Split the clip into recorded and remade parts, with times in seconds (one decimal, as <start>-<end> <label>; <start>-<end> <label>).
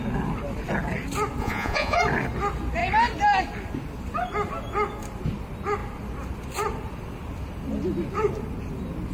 0.0-1.4 recorded; 1.4-2.0 remade; 2.0-9.1 recorded